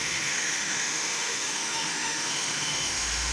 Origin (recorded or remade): remade